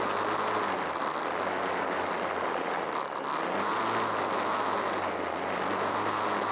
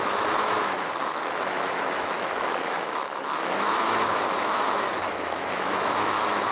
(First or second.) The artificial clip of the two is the second